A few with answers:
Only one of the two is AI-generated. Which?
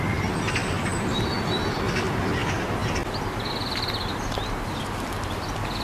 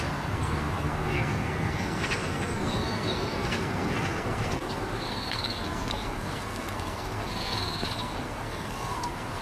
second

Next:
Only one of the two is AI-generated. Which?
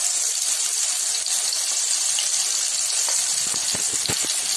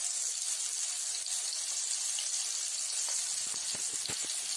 first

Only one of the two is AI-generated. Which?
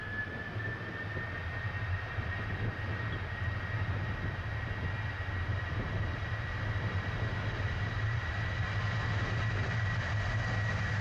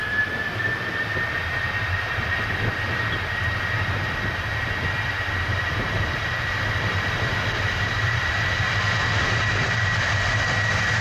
second